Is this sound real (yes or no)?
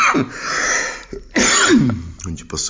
yes